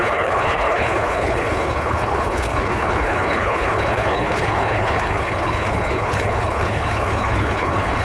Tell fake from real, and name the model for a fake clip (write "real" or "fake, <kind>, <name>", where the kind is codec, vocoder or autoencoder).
fake, codec, HILCodec